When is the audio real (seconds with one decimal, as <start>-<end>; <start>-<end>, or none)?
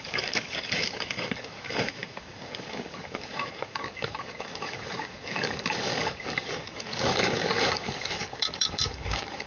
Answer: none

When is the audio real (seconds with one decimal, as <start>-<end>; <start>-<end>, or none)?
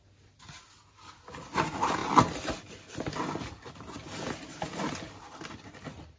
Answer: 0.0-6.2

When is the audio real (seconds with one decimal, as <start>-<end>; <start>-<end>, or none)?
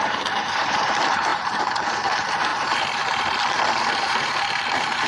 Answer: 2.5-4.0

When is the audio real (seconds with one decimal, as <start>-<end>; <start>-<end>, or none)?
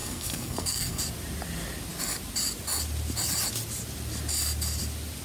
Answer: 1.0-5.2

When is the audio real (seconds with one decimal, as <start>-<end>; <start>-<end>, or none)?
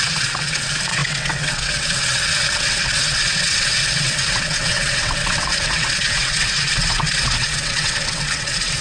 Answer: none